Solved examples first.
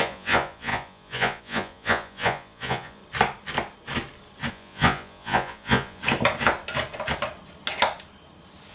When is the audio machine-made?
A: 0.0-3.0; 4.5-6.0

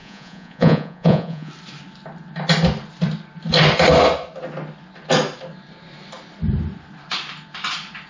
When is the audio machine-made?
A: 0.0-1.5

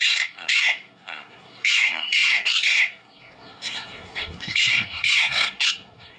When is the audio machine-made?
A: 0.0-6.2